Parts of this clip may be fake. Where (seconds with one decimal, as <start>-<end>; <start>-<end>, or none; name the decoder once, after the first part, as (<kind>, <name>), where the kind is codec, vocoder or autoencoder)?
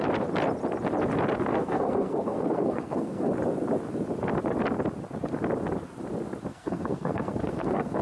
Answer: 1.5-3.3 (codec, SNAC); 6.5-8.0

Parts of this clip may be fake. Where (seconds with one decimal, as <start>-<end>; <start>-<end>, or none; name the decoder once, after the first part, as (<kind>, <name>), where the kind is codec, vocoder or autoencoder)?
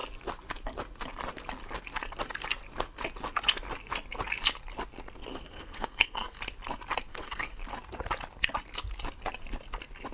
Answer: 5.3-6.4 (codec, SNAC); 7.1-7.6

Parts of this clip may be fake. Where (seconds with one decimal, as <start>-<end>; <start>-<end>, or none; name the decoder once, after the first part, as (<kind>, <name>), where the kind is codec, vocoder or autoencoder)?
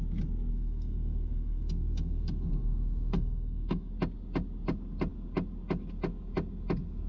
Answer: 0.5-3.9 (codec, SNAC)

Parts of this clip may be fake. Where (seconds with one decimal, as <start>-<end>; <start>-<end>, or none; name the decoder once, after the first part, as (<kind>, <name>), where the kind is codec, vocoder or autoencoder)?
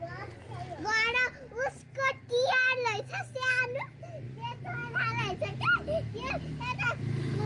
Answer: none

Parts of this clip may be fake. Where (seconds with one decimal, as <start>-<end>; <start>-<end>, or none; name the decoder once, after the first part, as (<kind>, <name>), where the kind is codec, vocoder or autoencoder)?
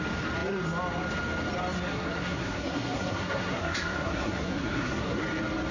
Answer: 1.9-5.2 (codec, SNAC)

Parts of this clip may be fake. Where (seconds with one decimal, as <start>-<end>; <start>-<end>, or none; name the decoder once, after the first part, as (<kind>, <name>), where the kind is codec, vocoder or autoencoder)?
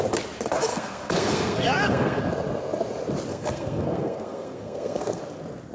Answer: 0.7-2.2 (codec, SNAC); 3.3-5.2